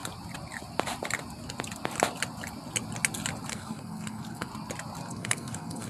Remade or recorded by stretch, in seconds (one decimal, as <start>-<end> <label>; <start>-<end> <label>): 0.0-3.5 recorded; 3.5-4.5 remade; 4.5-5.1 recorded; 5.1-5.9 remade